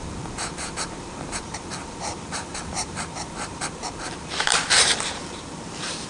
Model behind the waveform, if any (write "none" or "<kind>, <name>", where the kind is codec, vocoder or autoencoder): vocoder, BigVGAN v2